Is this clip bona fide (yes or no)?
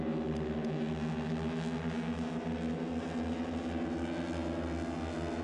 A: yes